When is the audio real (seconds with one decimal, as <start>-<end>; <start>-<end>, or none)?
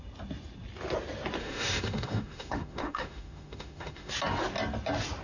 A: 0.0-1.4; 4.1-5.2